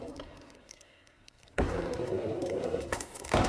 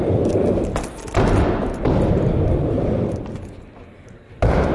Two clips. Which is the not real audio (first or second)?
first